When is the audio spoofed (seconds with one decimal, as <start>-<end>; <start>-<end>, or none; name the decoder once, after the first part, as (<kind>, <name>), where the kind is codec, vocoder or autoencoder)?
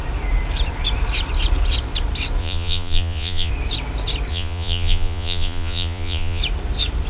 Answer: 2.4-3.5 (vocoder, Vocos); 4.3-6.4